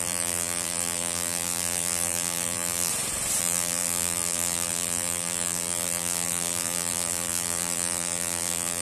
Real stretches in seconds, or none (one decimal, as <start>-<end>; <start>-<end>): 2.9-3.4